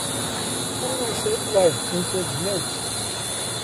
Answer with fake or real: real